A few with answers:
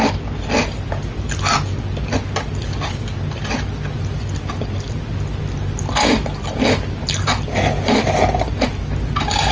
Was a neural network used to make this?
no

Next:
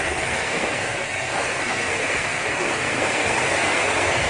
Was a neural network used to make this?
yes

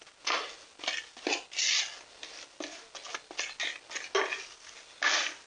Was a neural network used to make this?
no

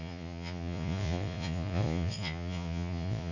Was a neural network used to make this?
yes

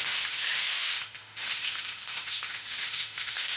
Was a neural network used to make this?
yes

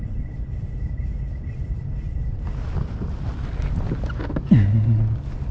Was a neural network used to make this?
no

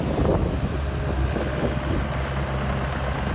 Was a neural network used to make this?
no